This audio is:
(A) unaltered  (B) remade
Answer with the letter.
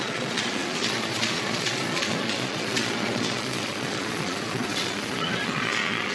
B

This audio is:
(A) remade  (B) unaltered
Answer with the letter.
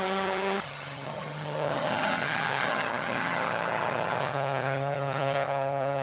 A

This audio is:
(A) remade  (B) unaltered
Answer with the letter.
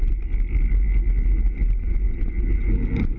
B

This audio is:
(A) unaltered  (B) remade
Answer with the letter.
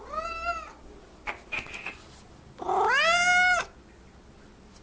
A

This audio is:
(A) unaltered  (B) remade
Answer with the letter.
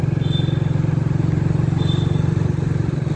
A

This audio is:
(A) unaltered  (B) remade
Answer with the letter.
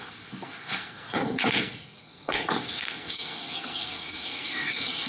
B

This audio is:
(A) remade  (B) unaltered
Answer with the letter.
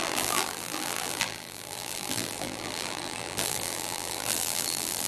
A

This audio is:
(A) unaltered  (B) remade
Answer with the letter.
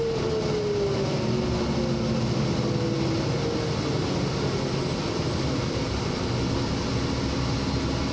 A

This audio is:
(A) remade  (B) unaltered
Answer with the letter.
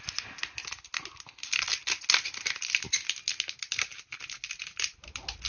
B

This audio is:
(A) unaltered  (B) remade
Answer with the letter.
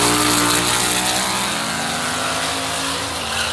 A